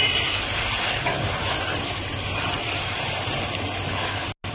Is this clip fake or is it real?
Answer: real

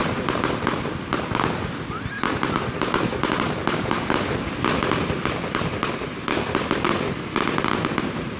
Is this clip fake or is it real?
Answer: real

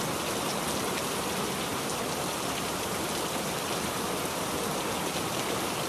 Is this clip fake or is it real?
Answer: fake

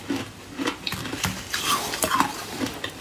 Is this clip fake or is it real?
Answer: real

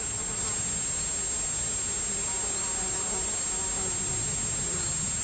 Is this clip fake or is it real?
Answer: real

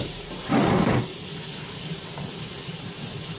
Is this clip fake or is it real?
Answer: real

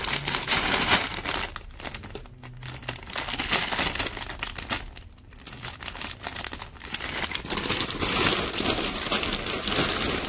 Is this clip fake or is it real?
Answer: real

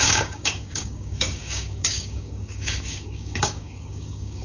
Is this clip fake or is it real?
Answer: fake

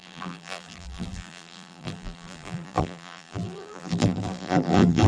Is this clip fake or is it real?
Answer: fake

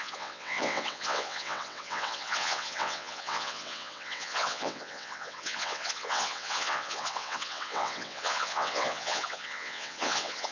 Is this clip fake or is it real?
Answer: fake